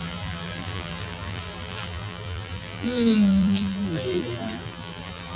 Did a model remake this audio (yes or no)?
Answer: yes